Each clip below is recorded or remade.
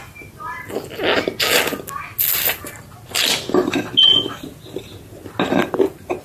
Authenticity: recorded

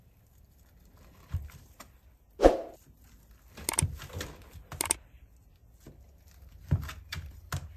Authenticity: recorded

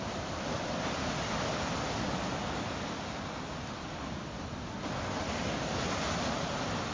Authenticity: recorded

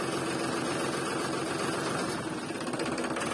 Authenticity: recorded